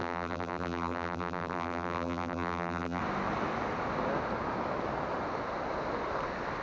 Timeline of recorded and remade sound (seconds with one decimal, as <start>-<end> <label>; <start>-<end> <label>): 0.0-3.0 remade; 3.0-6.6 recorded